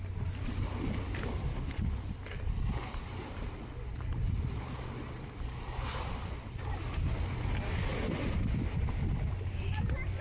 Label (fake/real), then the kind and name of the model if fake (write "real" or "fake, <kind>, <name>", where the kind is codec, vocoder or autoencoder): real